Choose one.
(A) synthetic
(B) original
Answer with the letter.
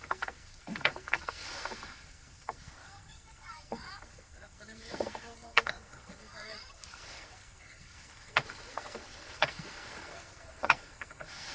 A